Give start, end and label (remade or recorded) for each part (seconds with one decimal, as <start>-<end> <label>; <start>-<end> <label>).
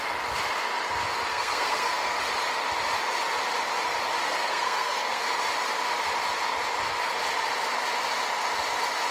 0.0-1.3 recorded; 1.3-2.2 remade; 2.2-4.2 recorded; 4.2-5.2 remade; 5.2-9.1 recorded